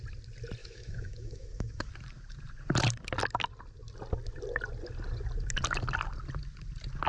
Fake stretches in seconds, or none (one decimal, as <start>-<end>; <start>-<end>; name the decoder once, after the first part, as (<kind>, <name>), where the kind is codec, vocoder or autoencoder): 0.6-1.9 (autoencoder, DAC-VAE)